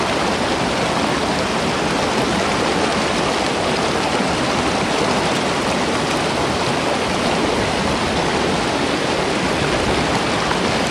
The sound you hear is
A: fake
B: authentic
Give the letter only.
B